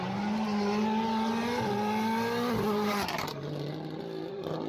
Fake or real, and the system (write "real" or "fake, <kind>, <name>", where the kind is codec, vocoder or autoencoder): real